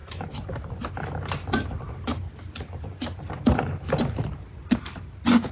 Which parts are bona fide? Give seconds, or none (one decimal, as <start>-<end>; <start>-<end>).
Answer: 0.7-1.4; 4.7-5.5